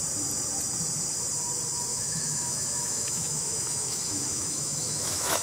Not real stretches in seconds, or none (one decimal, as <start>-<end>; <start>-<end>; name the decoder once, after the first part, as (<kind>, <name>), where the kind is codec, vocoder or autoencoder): 1.9-5.4 (autoencoder, DAC-VAE)

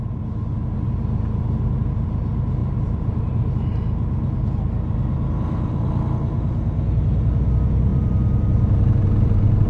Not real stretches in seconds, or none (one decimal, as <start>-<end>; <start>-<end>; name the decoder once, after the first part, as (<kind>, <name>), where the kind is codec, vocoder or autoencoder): 2.6-3.3 (vocoder, BigVGAN v2); 7.9-9.7